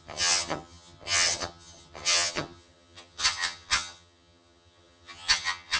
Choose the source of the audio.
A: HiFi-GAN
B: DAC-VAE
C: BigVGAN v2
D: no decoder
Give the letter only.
A